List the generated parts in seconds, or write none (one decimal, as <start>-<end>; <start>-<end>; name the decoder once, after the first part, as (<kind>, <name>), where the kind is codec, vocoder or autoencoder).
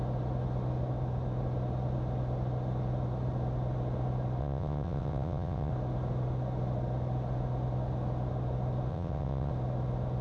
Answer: 4.4-5.7 (vocoder, WaveNeXt); 8.9-9.5